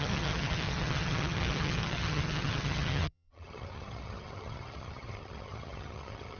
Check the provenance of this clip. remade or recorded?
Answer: remade